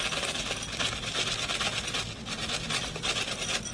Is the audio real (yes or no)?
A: yes